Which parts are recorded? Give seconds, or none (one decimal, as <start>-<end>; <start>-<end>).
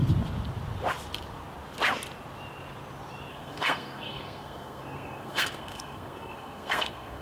0.0-3.3